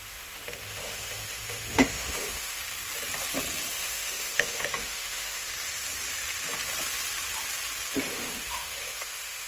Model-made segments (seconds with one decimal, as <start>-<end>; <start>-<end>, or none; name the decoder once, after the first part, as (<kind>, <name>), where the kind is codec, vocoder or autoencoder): 0.0-2.6 (autoencoder, DAC-VAE); 3.7-5.5; 8.1-9.5